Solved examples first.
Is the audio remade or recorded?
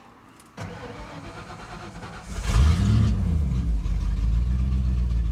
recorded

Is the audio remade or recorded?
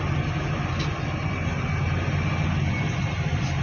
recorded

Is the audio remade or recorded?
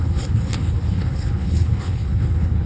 remade